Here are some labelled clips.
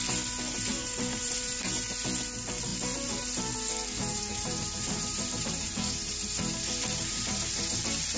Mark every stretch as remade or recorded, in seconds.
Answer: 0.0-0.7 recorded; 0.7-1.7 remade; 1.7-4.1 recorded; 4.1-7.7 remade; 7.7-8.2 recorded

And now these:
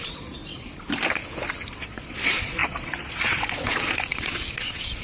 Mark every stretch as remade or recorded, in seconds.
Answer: 0.0-0.4 remade; 0.4-1.7 recorded; 1.7-5.0 remade